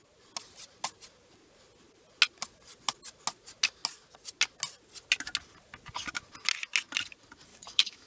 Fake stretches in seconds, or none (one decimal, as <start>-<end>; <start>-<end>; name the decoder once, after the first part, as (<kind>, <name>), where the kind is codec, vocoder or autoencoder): 7.5-8.1 (autoencoder, DAC-VAE)